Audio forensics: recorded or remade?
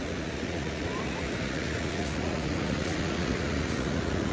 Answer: remade